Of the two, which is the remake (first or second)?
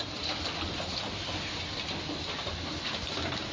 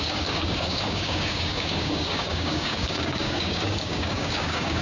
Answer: second